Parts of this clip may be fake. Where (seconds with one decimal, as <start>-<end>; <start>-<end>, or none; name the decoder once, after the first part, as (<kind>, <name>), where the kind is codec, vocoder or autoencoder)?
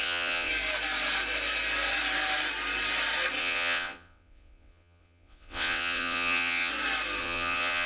0.0-0.5 (vocoder, WaveNeXt); 3.4-6.7; 7.2-7.9